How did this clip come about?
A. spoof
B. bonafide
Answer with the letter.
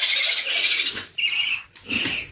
B